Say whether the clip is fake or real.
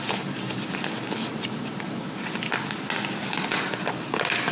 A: real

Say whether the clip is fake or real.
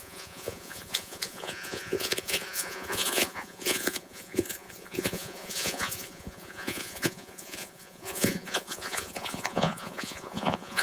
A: fake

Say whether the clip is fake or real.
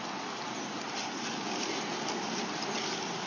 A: real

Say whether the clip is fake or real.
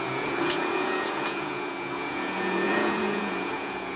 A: fake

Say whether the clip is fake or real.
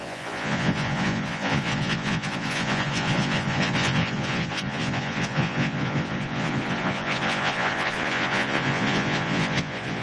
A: fake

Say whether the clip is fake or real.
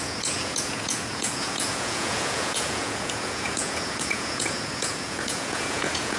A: fake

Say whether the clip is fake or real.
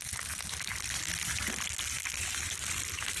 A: real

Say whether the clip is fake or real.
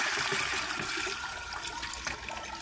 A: real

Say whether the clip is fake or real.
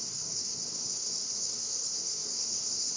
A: fake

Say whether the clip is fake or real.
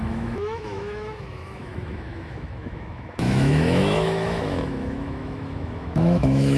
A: fake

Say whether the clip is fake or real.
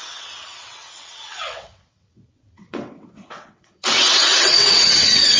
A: fake